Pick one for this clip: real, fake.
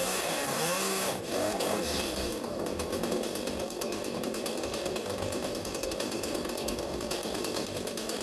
fake